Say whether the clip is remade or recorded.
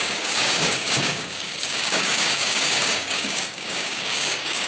remade